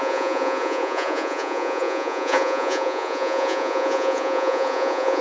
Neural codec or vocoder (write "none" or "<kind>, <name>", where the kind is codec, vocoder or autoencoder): vocoder, Vocos